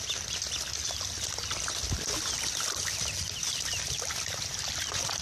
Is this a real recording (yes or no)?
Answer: yes